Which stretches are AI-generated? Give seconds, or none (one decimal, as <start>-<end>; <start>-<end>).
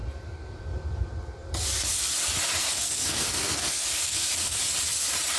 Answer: 2.6-4.6